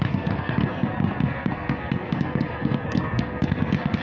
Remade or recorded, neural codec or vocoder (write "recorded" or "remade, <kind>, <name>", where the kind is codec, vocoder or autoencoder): remade, codec, SNAC